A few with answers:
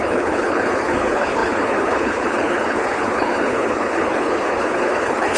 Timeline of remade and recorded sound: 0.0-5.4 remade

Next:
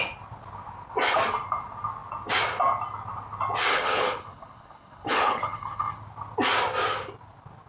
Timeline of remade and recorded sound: 0.0-3.7 recorded; 3.7-6.0 remade; 6.0-7.7 recorded

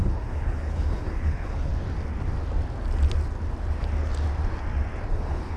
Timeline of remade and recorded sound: 0.0-1.7 remade; 1.7-5.1 recorded; 5.1-5.6 remade

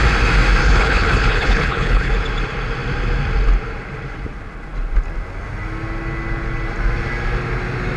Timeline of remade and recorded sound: 0.0-0.6 recorded; 0.6-2.1 remade; 2.1-8.0 recorded

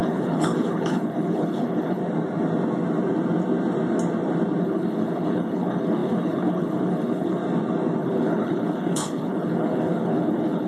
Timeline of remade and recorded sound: 0.0-2.0 remade; 2.0-4.6 recorded; 4.6-7.4 remade; 7.4-8.0 recorded; 8.0-10.7 remade

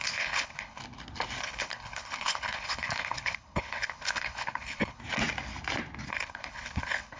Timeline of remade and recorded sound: 0.0-0.8 remade; 0.8-1.4 recorded; 1.4-5.0 remade; 5.0-6.1 recorded; 6.1-7.2 remade

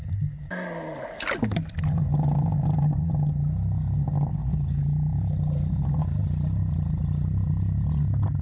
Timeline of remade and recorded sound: 0.0-4.3 recorded; 4.3-4.8 remade; 4.8-8.4 recorded

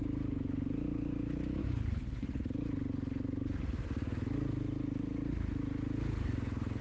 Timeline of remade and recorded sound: 0.0-1.6 recorded; 1.6-2.4 remade; 2.4-6.8 recorded